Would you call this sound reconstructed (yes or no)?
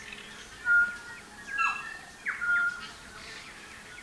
yes